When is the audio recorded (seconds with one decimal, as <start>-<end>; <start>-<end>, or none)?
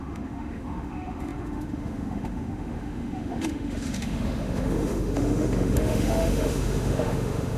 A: none